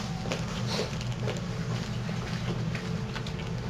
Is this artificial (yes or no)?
no